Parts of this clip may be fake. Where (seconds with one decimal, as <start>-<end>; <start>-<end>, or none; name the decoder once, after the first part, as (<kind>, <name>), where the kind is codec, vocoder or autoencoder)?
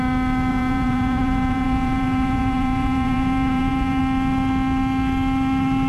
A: 0.5-4.0 (vocoder, Vocos)